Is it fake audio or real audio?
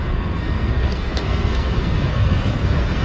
fake